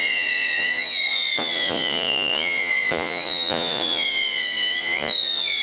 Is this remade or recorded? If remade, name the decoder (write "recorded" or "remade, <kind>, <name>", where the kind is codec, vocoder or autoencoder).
remade, vocoder, Vocos